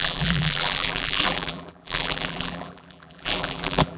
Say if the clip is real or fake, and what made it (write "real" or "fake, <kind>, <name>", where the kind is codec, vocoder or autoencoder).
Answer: fake, vocoder, BigVGAN v2